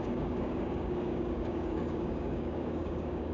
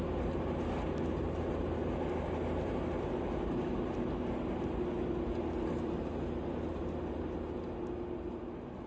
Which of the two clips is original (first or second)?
second